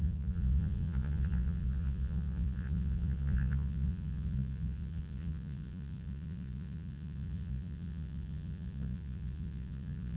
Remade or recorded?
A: remade